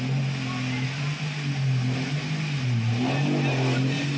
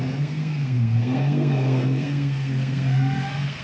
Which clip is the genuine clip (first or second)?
first